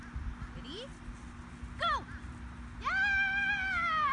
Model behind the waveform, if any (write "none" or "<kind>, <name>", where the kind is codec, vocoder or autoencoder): none